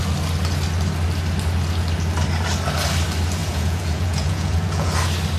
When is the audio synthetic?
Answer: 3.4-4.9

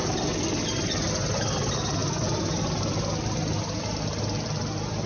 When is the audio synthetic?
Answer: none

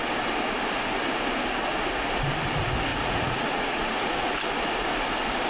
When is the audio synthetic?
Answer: 2.9-4.4